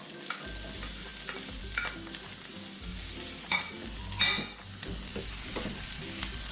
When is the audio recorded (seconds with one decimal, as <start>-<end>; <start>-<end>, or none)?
0.0-2.9; 3.6-6.5